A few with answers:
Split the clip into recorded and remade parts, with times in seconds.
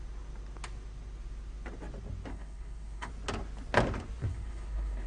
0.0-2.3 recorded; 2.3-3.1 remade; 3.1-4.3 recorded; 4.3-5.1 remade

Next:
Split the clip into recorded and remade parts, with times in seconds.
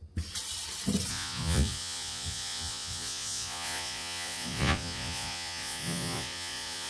0.0-1.1 recorded; 1.1-6.9 remade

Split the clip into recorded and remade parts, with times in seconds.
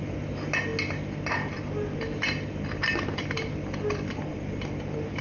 0.0-5.2 recorded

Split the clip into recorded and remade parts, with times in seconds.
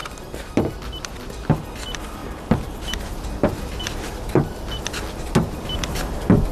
0.0-6.5 recorded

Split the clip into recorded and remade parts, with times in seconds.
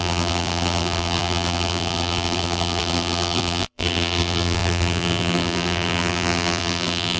0.0-7.2 remade